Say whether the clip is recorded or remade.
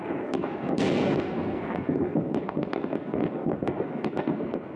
remade